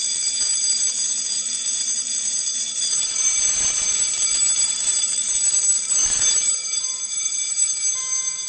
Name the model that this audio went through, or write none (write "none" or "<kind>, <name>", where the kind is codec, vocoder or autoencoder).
vocoder, BigVGAN v2